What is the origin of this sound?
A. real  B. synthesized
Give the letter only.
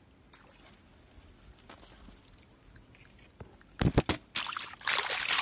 A